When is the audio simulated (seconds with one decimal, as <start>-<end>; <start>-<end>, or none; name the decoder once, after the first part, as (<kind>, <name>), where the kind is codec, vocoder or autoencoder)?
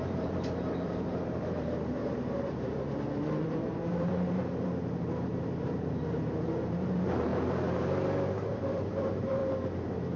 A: 0.0-9.4 (vocoder, BigVGAN v2)